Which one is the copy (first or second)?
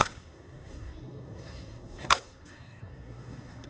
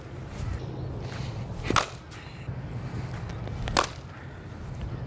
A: first